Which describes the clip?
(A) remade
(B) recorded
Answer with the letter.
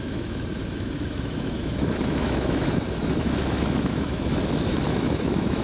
A